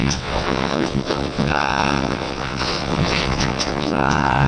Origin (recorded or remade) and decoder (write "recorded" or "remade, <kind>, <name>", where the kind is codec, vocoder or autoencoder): remade, vocoder, WaveNeXt